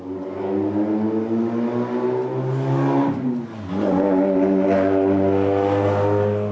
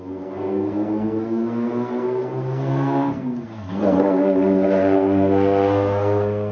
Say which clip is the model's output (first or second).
second